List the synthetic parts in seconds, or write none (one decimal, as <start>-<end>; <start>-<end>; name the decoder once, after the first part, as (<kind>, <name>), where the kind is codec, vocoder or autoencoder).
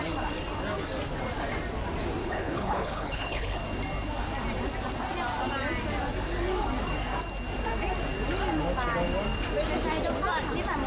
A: 2.2-3.6 (codec, HILCodec)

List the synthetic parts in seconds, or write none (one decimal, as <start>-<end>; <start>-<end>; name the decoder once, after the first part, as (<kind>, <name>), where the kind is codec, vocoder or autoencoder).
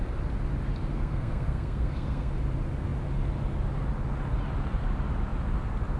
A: 0.9-2.3 (codec, SNAC)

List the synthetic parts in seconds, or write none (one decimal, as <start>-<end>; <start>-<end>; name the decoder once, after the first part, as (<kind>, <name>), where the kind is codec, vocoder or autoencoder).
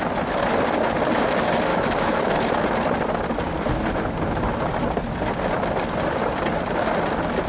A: 1.7-2.3 (autoencoder, DAC-VAE)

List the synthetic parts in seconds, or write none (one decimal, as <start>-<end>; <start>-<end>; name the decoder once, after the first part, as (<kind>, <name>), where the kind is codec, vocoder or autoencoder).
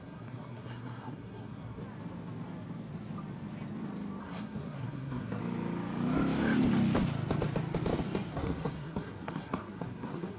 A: 0.0-1.8 (codec, SNAC); 4.2-5.4; 8.3-10.4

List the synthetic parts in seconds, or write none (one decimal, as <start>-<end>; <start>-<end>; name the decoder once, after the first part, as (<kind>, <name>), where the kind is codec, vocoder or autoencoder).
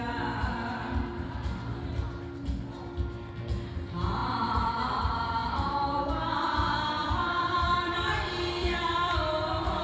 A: 4.2-5.0 (vocoder, BigVGAN v2); 5.4-6.1; 7.0-9.1